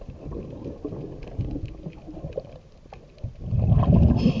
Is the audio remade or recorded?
recorded